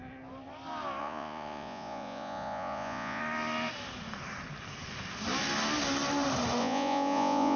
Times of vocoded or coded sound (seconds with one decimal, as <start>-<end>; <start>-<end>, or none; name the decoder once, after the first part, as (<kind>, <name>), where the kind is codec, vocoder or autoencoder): 1.0-3.2 (vocoder, Vocos); 6.6-7.6